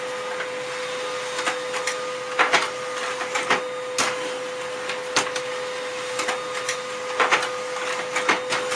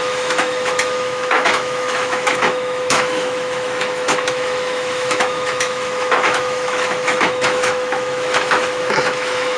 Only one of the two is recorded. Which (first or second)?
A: first